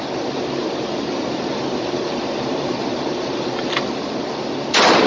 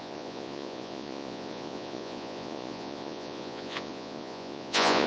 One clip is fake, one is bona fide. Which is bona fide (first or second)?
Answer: first